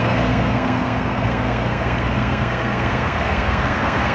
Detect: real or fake fake